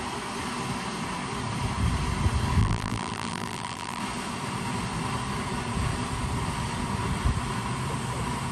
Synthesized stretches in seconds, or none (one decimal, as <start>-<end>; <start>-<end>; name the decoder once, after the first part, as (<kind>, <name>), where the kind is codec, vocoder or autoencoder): 2.6-4.0 (vocoder, BigVGAN v2)